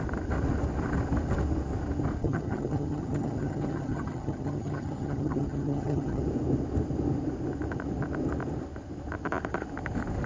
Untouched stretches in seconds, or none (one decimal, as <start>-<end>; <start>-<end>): 0.0-2.2; 6.2-10.3